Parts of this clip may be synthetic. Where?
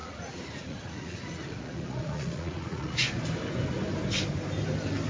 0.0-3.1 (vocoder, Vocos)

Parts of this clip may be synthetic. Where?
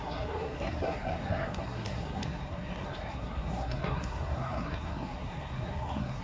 0.0-6.2 (codec, SNAC)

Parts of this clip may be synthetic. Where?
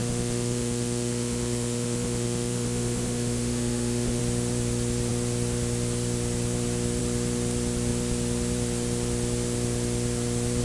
0.0-4.2 (autoencoder, DAC-VAE)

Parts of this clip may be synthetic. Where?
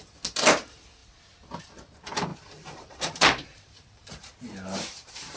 2.3-5.4 (vocoder, BigVGAN v2)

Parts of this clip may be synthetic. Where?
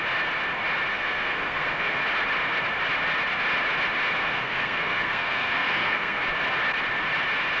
0.9-2.0 (codec, SNAC); 4.2-6.2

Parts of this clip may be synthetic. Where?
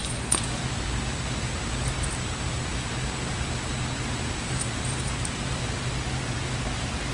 0.0-0.6 (vocoder, Vocos)